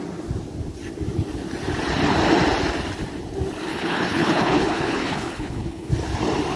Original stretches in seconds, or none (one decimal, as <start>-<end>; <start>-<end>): 0.0-3.7; 5.9-6.6